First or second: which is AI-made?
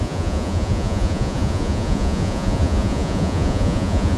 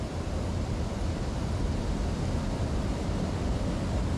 first